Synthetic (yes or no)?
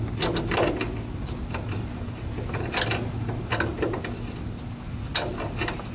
no